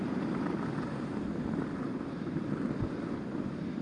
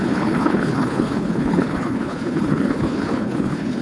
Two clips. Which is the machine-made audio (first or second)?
second